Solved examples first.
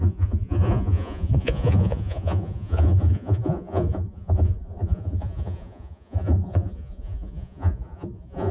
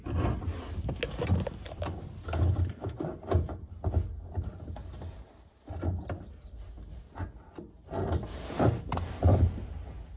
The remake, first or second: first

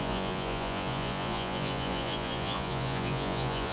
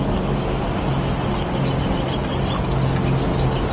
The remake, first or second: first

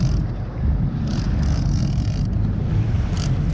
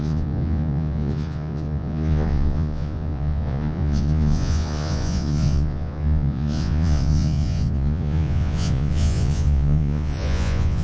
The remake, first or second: second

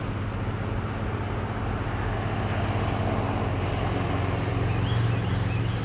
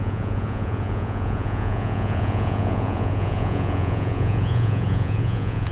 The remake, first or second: second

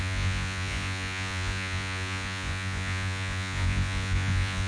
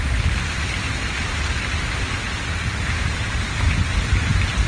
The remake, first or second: first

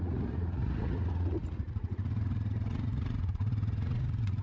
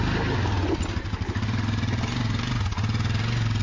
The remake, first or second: first